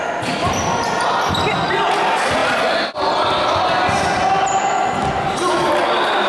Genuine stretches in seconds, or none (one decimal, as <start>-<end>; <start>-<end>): 0.0-6.3